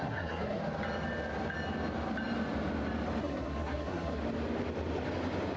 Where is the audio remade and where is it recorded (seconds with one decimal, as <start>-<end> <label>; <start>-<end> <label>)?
0.0-0.6 remade; 0.6-3.2 recorded; 3.2-4.2 remade; 4.2-5.6 recorded